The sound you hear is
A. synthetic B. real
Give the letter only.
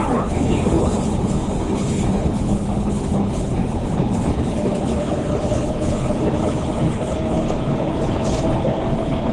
A